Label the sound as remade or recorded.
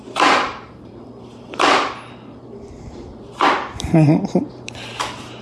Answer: remade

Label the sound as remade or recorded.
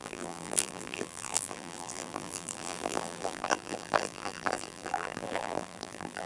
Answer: remade